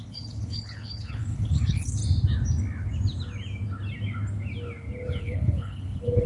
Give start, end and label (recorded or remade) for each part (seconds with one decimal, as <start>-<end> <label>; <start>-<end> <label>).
0.0-2.0 remade; 2.0-5.1 recorded; 5.1-6.3 remade